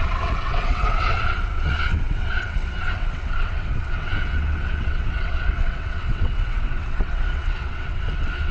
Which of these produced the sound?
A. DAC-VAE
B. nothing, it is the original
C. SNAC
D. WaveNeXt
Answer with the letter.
D